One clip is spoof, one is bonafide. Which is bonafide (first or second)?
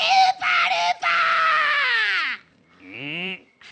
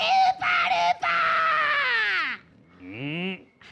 second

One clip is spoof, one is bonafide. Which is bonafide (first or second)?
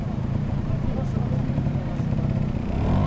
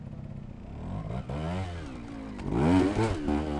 second